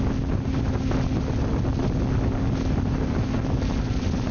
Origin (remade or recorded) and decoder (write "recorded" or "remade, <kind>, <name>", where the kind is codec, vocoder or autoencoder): recorded